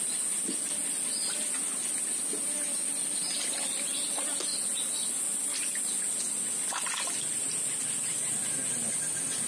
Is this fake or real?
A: real